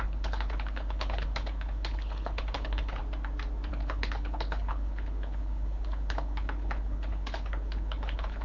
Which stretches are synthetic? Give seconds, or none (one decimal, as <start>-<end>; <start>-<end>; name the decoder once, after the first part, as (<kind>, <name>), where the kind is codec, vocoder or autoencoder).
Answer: 0.0-3.0 (codec, HILCodec); 3.7-8.4